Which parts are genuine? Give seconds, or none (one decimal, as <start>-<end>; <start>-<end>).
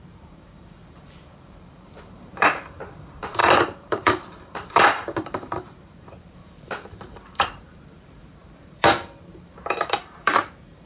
none